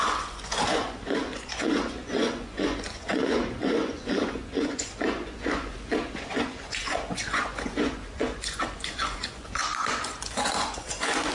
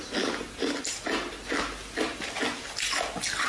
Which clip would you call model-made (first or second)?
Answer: first